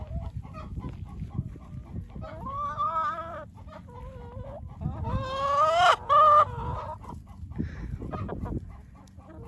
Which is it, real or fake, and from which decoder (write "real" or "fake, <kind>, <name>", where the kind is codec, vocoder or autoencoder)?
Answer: real